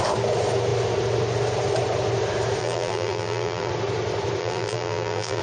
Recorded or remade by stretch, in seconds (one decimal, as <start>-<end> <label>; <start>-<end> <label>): 0.0-2.6 recorded; 2.6-3.7 remade; 3.7-4.4 recorded; 4.4-5.4 remade